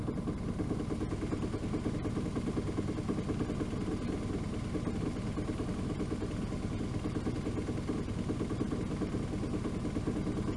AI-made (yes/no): no